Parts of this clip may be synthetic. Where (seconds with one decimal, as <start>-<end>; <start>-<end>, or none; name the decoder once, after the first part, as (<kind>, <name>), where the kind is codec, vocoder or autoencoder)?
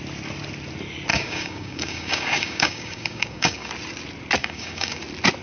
1.1-3.7 (codec, DAC); 4.4-5.0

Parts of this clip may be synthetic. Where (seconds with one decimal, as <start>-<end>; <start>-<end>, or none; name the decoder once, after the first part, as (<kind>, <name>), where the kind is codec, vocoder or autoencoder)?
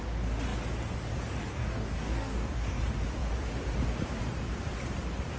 1.5-2.8 (codec, DAC)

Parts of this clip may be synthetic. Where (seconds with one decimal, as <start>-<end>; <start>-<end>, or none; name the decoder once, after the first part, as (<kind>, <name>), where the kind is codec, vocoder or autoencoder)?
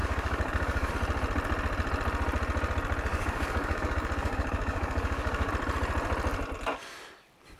0.0-0.9 (codec, DAC); 3.1-5.5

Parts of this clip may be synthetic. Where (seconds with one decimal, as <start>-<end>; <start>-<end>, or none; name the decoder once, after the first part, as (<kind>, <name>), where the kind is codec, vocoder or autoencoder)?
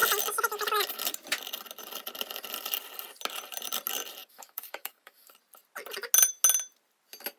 4.2-5.3 (codec, DAC)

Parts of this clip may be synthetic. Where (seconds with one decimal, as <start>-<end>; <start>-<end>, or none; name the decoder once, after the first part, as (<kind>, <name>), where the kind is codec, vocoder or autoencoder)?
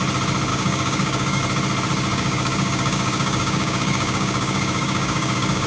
0.5-1.4 (codec, DAC); 2.1-5.7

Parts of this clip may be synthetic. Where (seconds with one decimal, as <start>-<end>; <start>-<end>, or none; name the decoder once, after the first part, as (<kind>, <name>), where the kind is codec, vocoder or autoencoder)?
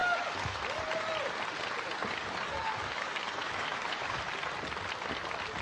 0.0-0.6 (codec, DAC); 2.0-4.2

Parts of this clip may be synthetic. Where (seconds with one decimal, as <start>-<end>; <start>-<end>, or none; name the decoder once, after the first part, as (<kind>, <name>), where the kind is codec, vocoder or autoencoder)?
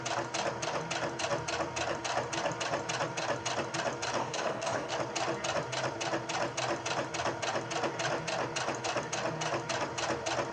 4.2-4.9 (codec, DAC)